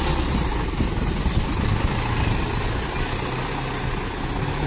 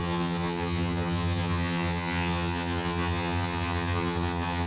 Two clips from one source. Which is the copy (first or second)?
second